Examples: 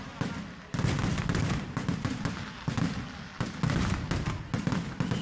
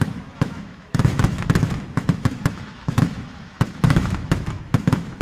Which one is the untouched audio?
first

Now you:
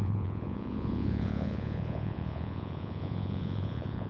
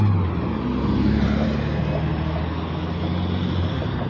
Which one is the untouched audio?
second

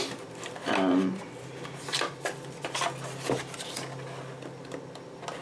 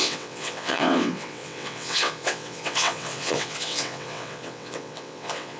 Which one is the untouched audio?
first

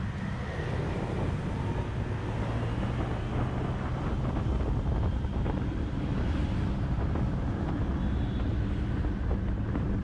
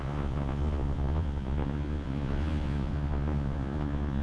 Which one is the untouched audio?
first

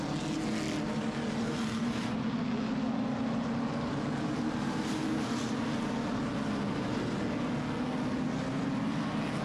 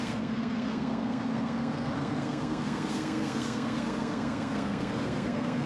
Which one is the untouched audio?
first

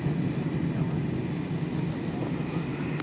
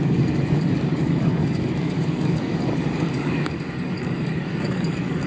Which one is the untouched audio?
first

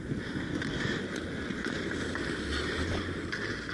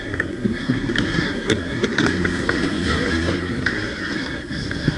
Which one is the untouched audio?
first